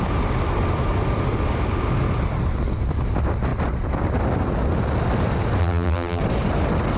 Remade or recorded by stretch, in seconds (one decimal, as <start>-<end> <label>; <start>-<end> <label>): 0.0-5.6 recorded; 5.6-6.2 remade; 6.2-7.0 recorded